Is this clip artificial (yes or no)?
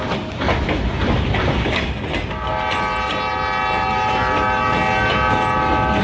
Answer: no